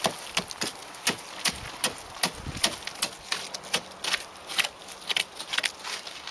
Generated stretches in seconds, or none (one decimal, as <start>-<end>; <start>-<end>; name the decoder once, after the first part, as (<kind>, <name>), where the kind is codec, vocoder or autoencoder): 0.8-1.3 (vocoder, BigVGAN v2)